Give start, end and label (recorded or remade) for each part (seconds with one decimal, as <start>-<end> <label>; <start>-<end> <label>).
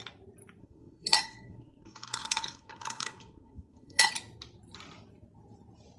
0.0-0.6 recorded; 0.6-4.1 remade; 4.1-6.0 recorded